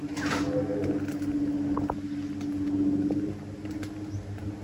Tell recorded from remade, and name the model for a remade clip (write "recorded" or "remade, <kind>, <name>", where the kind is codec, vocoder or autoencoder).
recorded